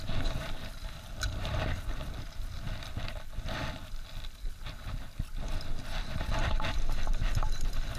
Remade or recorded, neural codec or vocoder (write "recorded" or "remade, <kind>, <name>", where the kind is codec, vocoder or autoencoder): recorded